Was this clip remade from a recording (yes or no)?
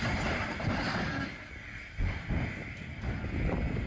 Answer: no